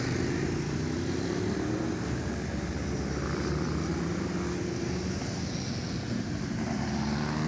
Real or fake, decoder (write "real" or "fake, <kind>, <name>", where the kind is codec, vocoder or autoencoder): real